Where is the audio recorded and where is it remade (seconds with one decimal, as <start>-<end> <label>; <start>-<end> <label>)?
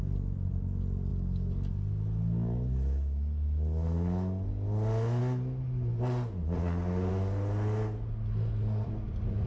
0.0-9.5 recorded